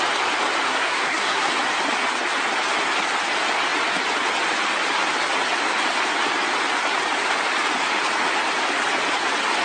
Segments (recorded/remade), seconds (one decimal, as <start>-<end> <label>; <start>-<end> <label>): 0.0-0.7 recorded; 0.7-1.5 remade; 1.5-9.6 recorded